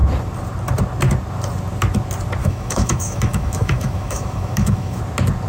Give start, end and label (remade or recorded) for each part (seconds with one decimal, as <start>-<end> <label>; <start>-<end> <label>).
0.0-2.4 recorded; 2.4-5.0 remade; 5.0-5.5 recorded